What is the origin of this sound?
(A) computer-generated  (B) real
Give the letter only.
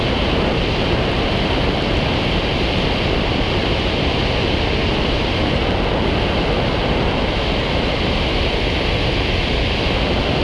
B